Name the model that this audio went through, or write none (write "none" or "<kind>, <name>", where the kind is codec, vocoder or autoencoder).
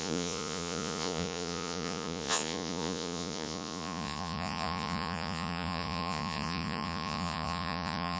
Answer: vocoder, Vocos